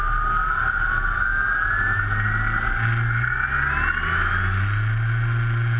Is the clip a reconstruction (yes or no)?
no